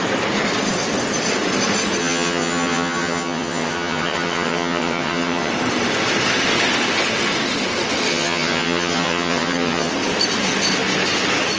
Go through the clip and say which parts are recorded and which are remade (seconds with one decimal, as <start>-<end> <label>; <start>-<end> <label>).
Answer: 0.0-2.0 recorded; 2.0-5.5 remade; 5.5-8.1 recorded; 8.1-9.9 remade; 9.9-11.6 recorded